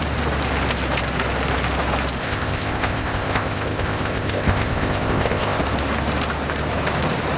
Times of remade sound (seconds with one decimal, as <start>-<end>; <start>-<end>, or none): 2.2-5.6